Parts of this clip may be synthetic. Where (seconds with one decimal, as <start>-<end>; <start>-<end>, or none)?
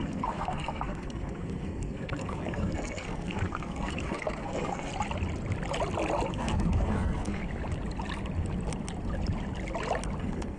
0.0-4.9; 6.3-7.4; 10.2-10.6